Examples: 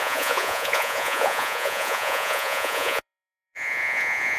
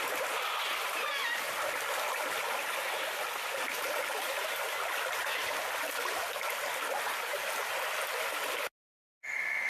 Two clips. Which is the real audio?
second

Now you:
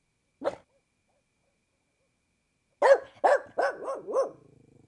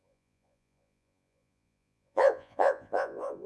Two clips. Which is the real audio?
first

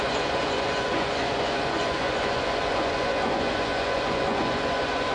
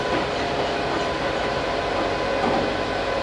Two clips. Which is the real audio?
second